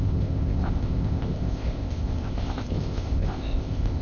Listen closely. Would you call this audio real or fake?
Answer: fake